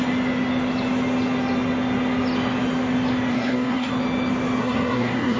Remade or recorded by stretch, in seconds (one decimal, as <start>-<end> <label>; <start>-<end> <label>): 0.0-3.3 recorded; 3.3-3.9 remade; 3.9-4.6 recorded; 4.6-5.4 remade